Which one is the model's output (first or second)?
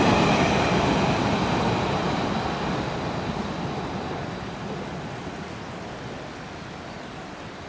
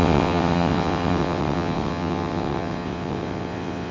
second